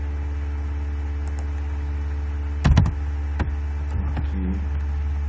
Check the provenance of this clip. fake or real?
real